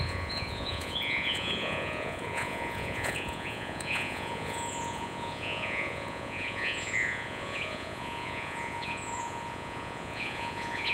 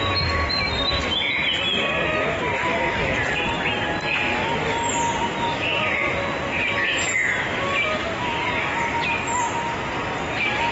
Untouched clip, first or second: second